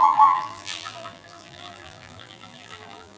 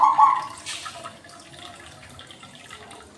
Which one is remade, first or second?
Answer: first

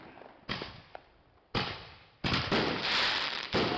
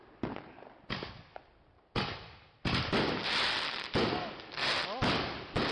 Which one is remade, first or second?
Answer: first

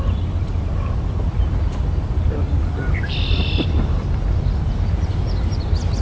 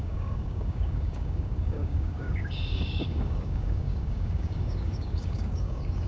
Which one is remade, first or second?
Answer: second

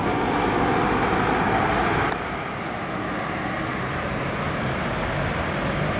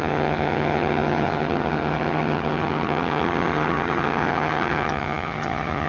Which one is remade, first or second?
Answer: second